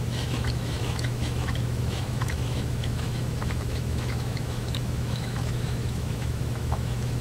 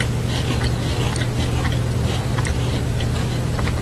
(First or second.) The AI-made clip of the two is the first